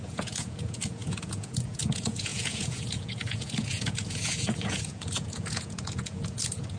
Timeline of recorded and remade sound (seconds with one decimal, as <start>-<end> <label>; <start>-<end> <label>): 0.0-6.8 remade